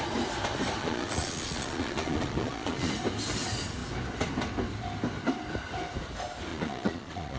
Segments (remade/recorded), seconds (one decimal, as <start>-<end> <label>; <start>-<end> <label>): 0.0-0.8 recorded; 0.8-2.9 remade; 2.9-6.5 recorded; 6.5-7.4 remade